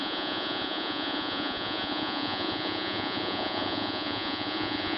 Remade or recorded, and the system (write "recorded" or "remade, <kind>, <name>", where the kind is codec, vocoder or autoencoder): remade, vocoder, Vocos